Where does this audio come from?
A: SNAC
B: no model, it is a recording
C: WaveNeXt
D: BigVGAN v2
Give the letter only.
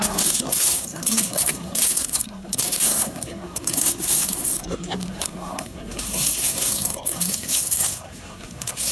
A